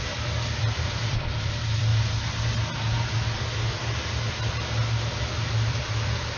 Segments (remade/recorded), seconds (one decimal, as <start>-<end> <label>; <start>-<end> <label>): 0.0-1.9 remade; 1.9-5.7 recorded; 5.7-6.4 remade